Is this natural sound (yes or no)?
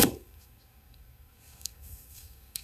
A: no